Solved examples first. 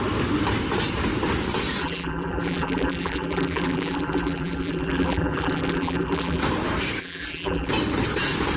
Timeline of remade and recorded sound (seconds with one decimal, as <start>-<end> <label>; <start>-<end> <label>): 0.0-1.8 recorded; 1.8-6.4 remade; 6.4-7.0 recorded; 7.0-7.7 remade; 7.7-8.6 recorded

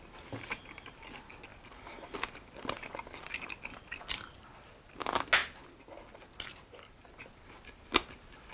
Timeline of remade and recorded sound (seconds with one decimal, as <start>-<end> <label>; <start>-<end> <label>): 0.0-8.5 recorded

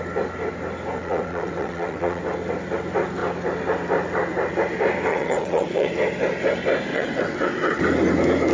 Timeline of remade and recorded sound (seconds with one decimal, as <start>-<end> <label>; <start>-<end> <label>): 0.0-1.0 recorded; 1.0-2.2 remade; 2.2-5.1 recorded; 5.1-5.9 remade; 5.9-6.9 recorded; 6.9-7.8 remade; 7.8-8.5 recorded